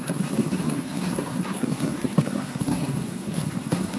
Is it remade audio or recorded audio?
remade